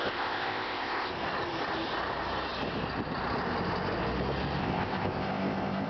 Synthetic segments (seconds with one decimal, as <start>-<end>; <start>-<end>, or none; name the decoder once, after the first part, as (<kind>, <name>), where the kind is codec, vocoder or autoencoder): 0.0-1.1 (codec, ZipCodec); 4.6-5.9